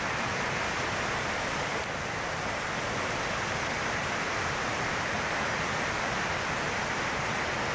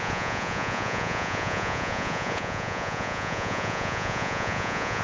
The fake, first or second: second